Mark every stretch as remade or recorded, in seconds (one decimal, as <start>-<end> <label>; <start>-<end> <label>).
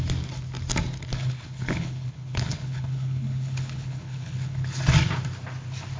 0.0-1.2 recorded; 1.2-4.8 remade; 4.8-6.0 recorded